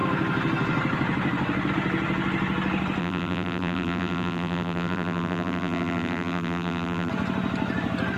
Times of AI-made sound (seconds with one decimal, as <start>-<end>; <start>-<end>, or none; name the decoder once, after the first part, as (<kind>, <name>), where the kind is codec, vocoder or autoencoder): 3.0-7.1 (vocoder, BigVGAN v2)